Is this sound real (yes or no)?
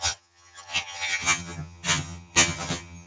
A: no